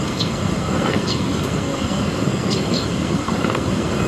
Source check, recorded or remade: remade